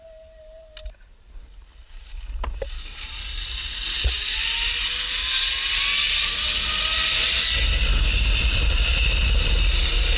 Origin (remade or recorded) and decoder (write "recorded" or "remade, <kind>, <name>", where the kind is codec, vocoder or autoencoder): recorded